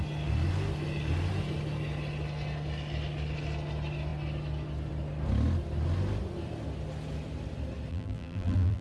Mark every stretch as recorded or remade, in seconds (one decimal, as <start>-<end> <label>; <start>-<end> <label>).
0.0-7.9 recorded; 7.9-8.8 remade